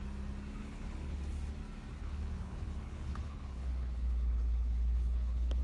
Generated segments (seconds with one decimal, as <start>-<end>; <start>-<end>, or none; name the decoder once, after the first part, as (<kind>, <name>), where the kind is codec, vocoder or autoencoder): 0.6-1.2 (codec, HILCodec); 2.0-5.6